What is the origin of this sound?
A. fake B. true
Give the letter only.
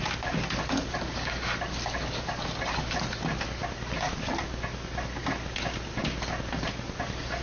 B